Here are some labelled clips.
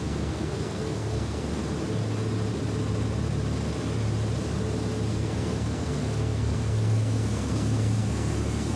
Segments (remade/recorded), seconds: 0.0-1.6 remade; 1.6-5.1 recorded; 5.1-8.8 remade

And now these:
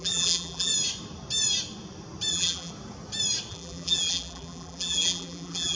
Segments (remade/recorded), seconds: 0.0-0.7 remade; 0.7-2.3 recorded; 2.3-2.7 remade; 2.7-3.5 recorded; 3.5-5.7 remade

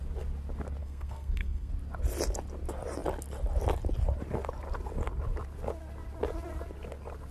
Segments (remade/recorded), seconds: 0.0-0.8 recorded; 0.8-1.7 remade; 1.7-7.3 recorded